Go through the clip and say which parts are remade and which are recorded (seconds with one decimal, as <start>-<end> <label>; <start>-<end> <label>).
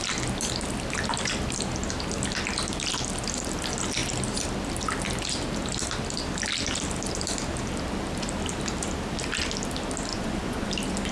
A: 0.0-10.1 recorded; 10.1-10.7 remade; 10.7-11.1 recorded